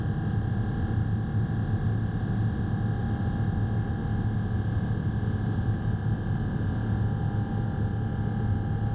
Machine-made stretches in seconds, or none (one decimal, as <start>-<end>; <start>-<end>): none

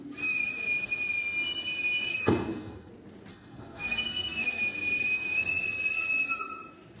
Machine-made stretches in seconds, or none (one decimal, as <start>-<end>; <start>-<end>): 2.1-2.9; 3.3-4.6

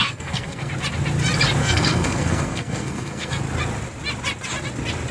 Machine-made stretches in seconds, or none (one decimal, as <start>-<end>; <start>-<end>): 0.0-0.7; 1.6-3.4

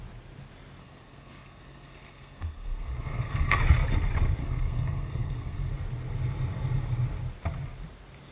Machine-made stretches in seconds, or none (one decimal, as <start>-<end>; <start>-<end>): 0.8-3.6; 4.4-5.7